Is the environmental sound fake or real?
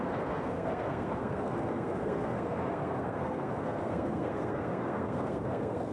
fake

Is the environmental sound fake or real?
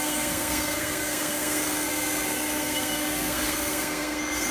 fake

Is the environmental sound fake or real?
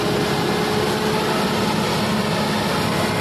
real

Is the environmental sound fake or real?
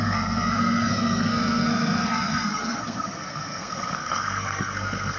fake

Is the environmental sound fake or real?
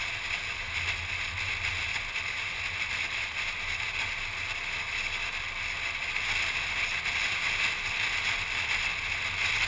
real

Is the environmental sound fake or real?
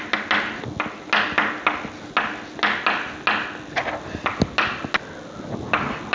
real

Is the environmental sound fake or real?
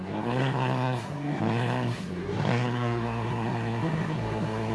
fake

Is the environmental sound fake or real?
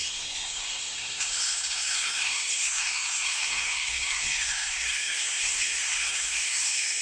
fake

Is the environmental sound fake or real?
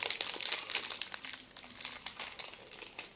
real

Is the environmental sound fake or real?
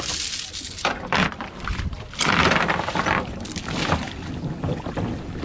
real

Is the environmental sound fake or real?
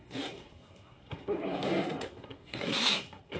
fake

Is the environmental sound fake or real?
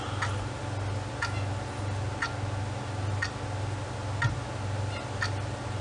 real